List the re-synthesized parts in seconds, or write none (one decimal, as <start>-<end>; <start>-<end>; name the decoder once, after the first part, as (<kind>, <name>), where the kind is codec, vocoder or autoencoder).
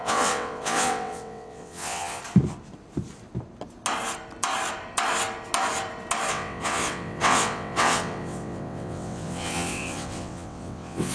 0.0-2.2 (vocoder, WaveNeXt); 6.3-11.1